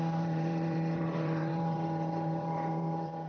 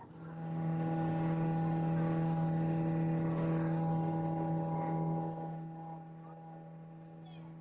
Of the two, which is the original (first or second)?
second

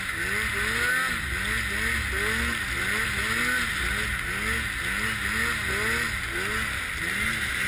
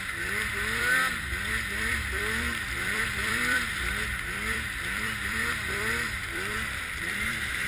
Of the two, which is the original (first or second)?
first